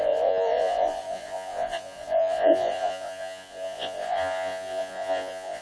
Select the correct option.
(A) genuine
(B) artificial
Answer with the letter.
B